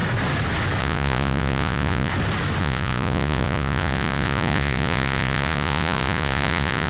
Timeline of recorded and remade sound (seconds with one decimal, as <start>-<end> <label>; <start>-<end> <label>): 0.0-0.8 recorded; 0.8-2.1 remade; 2.1-2.6 recorded; 2.6-6.9 remade